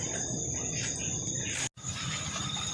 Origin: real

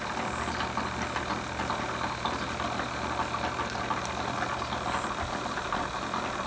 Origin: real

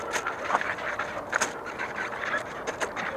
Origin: real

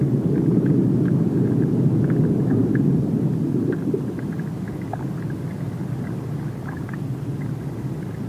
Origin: real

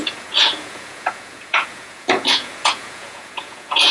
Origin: fake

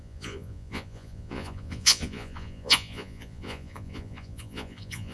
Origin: fake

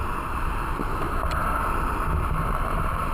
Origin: real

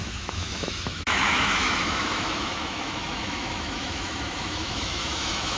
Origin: fake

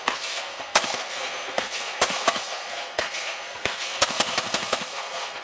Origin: fake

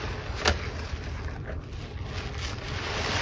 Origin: real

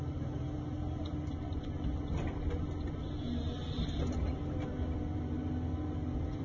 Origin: real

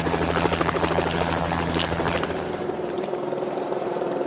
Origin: fake